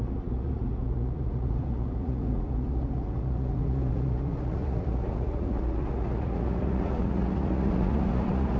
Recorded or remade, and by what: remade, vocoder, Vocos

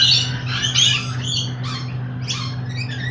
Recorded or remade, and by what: recorded